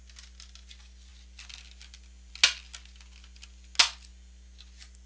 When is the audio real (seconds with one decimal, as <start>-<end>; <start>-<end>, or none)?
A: 0.0-5.1